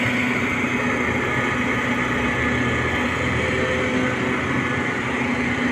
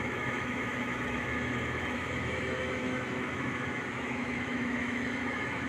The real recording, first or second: first